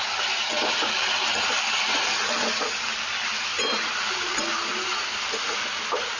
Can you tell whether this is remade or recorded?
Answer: recorded